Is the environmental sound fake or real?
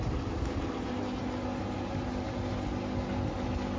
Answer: real